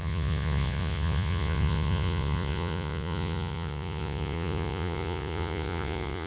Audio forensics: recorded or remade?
remade